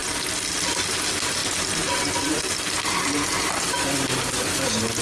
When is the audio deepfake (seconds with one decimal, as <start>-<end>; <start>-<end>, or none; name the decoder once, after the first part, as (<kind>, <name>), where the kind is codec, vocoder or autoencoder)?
none